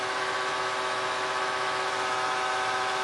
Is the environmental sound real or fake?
fake